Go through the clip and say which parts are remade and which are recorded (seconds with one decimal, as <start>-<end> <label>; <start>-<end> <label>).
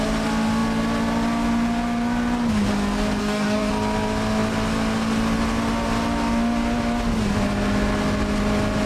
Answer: 0.0-3.2 recorded; 3.2-3.7 remade; 3.7-8.9 recorded